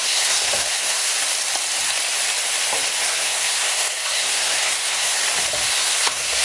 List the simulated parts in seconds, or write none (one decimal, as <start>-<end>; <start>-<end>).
0.0-1.1; 3.0-5.2; 5.7-6.4